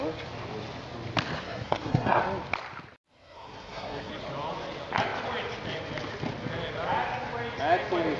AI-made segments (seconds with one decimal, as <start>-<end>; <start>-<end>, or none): 1.4-2.2; 3.1-4.1